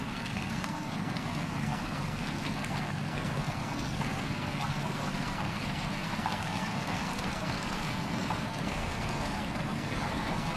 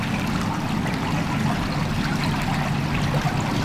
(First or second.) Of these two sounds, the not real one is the first